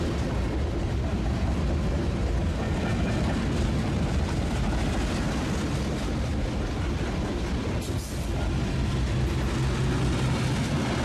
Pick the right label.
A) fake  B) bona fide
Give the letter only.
B